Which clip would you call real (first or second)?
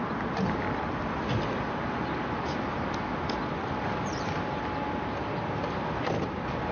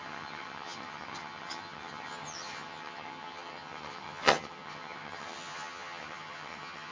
first